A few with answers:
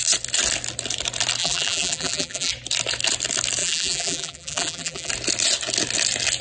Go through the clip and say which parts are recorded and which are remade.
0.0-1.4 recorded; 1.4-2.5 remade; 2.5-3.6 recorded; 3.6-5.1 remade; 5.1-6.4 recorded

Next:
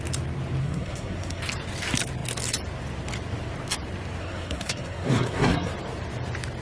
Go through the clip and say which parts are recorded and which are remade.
0.0-0.6 recorded; 0.6-1.4 remade; 1.4-4.2 recorded; 4.2-5.7 remade; 5.7-6.6 recorded

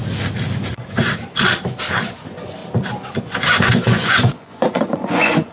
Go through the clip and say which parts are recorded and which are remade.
0.0-0.7 recorded; 0.7-1.2 remade; 1.2-2.1 recorded; 2.1-2.6 remade; 2.6-3.2 recorded; 3.2-5.5 remade